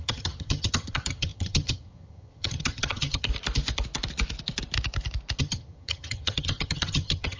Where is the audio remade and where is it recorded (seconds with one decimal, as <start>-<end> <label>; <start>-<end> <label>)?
0.0-3.3 remade; 3.3-5.4 recorded; 5.4-7.4 remade